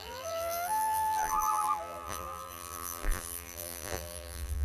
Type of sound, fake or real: fake